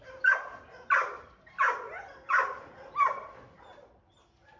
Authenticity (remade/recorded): recorded